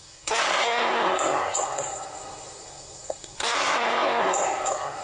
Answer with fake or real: fake